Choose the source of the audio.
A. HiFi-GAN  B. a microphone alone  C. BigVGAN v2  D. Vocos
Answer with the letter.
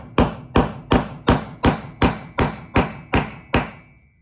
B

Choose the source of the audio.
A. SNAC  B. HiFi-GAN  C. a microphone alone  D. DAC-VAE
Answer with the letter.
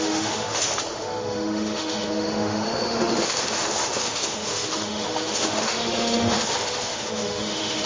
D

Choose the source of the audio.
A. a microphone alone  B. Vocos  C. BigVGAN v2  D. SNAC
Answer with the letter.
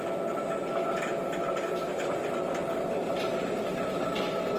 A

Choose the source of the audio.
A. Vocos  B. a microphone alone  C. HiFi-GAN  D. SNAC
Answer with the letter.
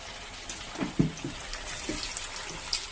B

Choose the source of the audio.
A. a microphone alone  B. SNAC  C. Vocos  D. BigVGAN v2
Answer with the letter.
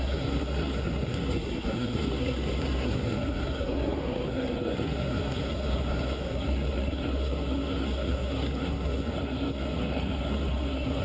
B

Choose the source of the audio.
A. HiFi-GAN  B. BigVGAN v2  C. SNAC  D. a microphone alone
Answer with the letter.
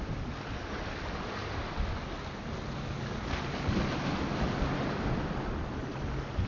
D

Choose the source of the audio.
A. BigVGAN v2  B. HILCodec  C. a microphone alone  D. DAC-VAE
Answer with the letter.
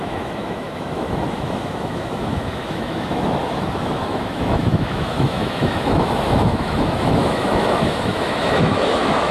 D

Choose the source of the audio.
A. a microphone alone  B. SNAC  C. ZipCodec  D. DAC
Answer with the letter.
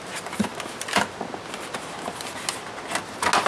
A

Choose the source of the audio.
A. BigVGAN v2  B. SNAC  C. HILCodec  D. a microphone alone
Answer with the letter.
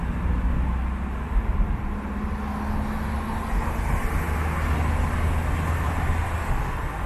D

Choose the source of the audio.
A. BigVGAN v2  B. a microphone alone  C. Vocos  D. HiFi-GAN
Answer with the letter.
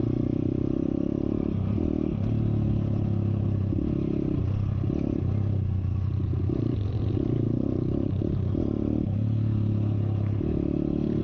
B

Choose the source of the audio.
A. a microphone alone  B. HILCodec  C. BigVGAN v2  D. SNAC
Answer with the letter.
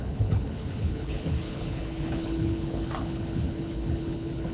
B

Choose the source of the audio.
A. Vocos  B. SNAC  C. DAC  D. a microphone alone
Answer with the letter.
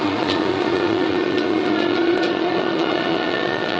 A